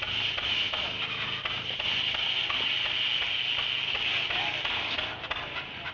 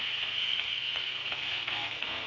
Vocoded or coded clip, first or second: second